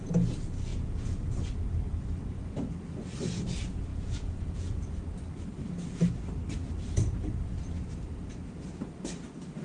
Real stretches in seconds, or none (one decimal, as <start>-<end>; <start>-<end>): 0.0-0.7; 1.3-3.9; 4.9-9.6